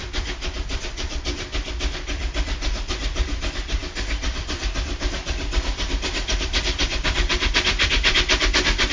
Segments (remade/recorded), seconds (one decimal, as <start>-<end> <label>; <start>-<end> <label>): 0.0-8.9 remade